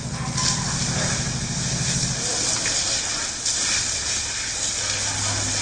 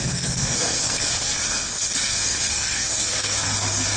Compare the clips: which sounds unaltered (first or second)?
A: first